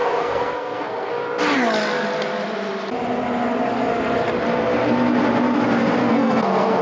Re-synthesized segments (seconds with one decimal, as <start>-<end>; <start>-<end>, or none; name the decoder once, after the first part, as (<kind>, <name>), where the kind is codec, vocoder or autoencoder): 0.0-1.1 (codec, SNAC); 6.0-6.8